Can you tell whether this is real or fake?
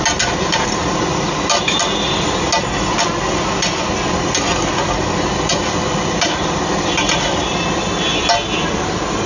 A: real